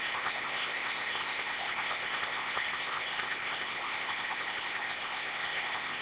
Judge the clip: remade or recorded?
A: remade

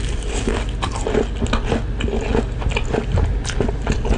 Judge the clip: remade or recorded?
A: recorded